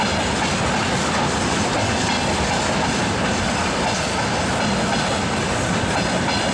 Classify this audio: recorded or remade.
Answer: recorded